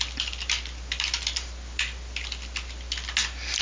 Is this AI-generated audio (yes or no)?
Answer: no